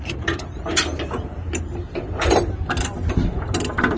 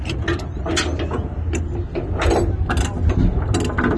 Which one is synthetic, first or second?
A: first